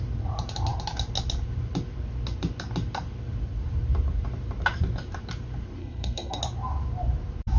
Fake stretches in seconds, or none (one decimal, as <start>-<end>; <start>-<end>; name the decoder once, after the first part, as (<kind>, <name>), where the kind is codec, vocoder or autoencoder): 5.8-6.4 (codec, SNAC)